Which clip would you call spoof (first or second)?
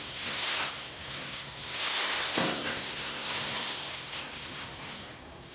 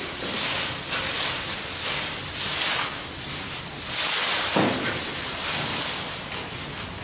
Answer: first